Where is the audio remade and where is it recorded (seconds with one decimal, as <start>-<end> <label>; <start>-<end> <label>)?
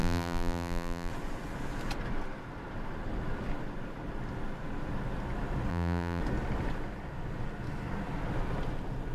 0.0-1.1 remade; 1.1-5.7 recorded; 5.7-6.2 remade; 6.2-9.1 recorded